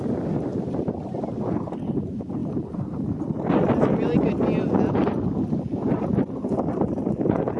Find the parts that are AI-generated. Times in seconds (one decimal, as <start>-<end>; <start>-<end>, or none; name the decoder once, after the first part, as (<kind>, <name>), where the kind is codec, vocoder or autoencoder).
none

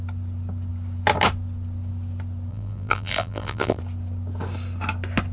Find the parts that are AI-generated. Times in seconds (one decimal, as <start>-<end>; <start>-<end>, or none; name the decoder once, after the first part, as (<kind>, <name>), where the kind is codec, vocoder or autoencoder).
2.5-3.8 (vocoder, BigVGAN v2)

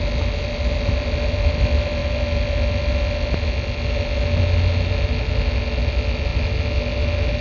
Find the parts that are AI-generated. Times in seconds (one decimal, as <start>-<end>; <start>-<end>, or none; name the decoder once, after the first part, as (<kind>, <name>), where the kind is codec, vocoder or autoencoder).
none

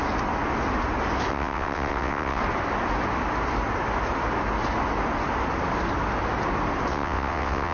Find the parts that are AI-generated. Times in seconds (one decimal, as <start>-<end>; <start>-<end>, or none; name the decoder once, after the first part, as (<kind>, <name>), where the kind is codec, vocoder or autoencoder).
1.3-2.4 (vocoder, WaveNeXt); 6.9-7.7

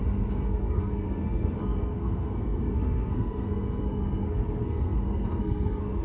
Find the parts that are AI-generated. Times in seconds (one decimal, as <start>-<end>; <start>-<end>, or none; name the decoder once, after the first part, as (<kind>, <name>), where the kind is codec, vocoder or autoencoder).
0.0-6.0 (codec, SNAC)

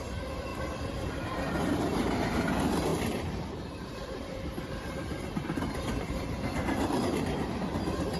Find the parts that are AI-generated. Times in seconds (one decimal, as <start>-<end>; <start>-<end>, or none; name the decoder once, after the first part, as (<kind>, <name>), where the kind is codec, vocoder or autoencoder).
0.5-1.4 (vocoder, BigVGAN v2); 2.9-7.0

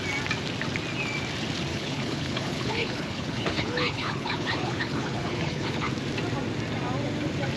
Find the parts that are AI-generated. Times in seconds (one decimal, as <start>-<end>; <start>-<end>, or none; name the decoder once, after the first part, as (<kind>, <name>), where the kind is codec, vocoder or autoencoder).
1.7-5.9 (codec, HILCodec)